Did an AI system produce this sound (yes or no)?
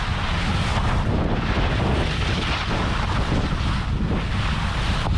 no